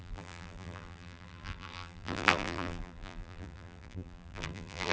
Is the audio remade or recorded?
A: remade